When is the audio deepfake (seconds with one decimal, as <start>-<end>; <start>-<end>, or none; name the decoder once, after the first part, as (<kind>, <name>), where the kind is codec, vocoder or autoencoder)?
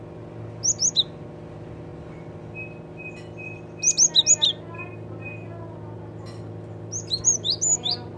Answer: none